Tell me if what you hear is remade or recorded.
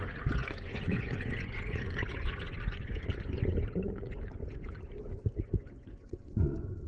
remade